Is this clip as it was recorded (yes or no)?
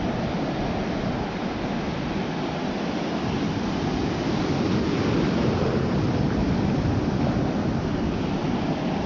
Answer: yes